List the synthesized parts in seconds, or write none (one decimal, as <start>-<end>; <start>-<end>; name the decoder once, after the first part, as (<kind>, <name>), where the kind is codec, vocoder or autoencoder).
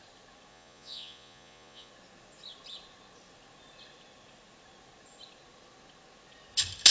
0.5-1.9 (vocoder, Vocos)